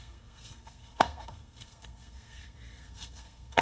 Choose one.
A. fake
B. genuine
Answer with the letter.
A